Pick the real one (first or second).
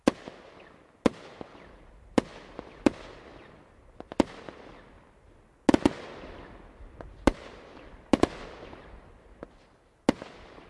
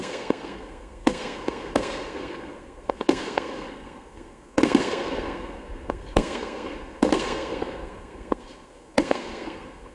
first